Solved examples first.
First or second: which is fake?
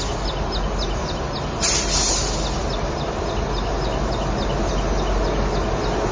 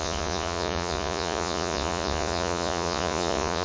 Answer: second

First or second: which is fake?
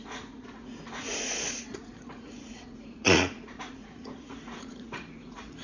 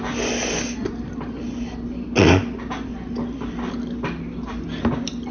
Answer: first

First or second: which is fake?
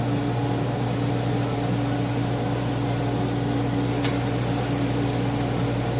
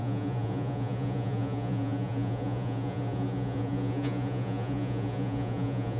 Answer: second